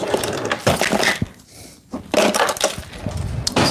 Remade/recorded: recorded